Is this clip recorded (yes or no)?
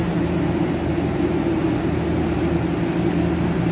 yes